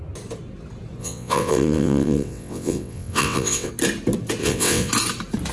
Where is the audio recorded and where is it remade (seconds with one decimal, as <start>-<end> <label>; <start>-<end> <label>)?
0.0-1.0 recorded; 1.0-3.7 remade; 3.7-4.4 recorded; 4.4-4.9 remade; 4.9-5.5 recorded